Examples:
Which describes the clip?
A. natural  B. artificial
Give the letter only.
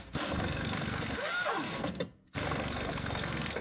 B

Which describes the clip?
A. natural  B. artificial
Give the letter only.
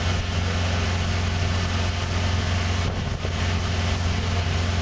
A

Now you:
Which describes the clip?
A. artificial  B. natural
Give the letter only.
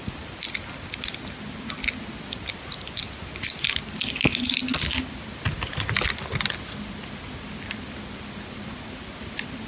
B